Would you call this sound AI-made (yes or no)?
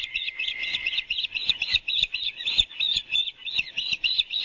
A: yes